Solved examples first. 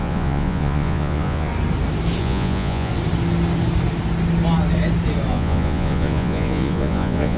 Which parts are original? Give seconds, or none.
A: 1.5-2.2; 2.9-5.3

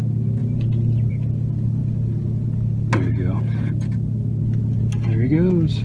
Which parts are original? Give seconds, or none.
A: 0.0-5.8